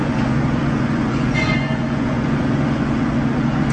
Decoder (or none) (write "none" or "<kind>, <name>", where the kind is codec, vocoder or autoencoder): vocoder, Vocos